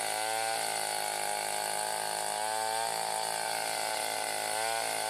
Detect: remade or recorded recorded